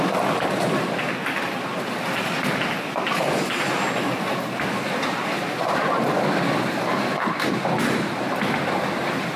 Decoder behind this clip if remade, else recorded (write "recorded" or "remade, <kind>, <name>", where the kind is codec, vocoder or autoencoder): recorded